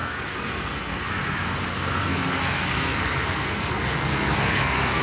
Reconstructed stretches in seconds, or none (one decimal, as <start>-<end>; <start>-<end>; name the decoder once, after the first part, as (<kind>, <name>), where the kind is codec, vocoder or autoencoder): 0.0-1.1 (codec, SNAC); 1.7-5.0